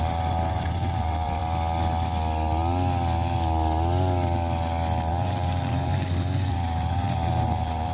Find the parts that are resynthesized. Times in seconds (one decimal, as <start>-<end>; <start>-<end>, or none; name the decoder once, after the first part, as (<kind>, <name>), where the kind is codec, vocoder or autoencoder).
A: 0.0-1.4 (vocoder, BigVGAN v2); 5.1-5.9; 6.5-7.9